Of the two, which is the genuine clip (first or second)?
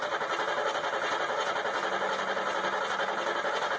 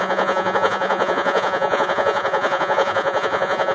first